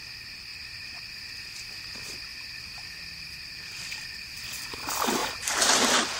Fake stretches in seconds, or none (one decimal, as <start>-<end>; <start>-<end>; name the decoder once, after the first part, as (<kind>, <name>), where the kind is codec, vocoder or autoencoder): 2.3-3.8 (vocoder, BigVGAN v2); 5.2-5.8